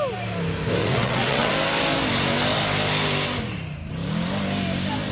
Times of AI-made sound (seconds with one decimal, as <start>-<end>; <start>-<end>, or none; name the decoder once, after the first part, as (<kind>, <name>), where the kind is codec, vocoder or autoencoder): 0.8-1.5 (vocoder, WaveNeXt)